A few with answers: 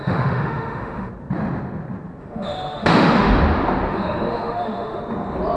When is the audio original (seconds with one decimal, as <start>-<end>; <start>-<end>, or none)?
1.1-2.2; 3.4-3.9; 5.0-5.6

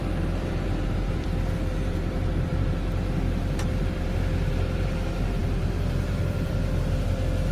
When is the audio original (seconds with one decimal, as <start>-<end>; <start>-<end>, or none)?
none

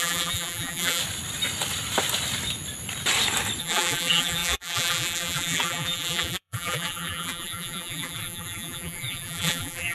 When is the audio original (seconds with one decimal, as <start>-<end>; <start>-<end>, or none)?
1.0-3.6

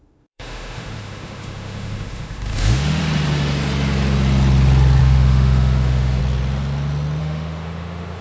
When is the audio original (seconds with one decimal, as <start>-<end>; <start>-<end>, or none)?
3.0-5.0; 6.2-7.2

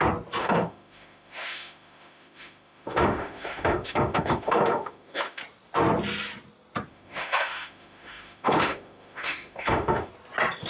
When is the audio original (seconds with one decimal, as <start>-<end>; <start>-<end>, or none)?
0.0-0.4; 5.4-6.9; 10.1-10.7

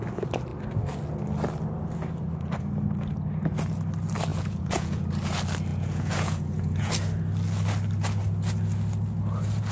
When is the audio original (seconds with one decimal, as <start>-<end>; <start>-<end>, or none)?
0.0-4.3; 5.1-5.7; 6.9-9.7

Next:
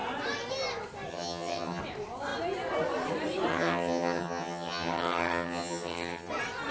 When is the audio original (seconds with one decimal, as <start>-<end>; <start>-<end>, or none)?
0.0-1.1; 1.8-3.5; 6.3-6.7